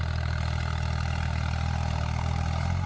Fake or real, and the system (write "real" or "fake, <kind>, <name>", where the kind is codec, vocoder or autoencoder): real